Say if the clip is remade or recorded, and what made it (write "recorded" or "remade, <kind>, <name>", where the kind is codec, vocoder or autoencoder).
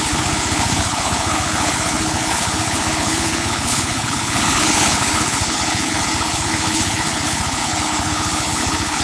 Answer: remade, codec, HILCodec